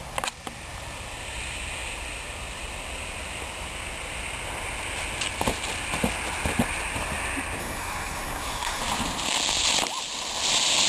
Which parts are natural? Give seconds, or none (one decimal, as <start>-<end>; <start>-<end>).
0.0-7.6; 8.8-10.9